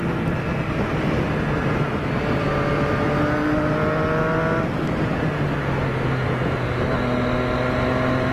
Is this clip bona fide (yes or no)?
yes